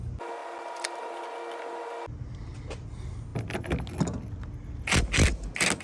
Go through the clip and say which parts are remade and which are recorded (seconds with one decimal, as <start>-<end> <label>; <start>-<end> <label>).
0.0-5.8 recorded